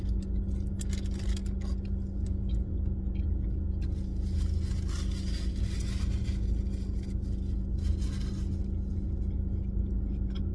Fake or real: real